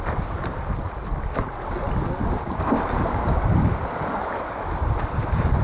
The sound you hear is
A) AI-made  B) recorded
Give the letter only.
B